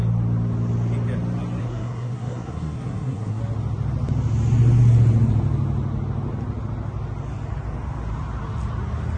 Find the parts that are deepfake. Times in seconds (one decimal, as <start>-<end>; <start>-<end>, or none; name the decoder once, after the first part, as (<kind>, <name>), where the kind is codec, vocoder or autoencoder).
1.6-3.4 (codec, SNAC)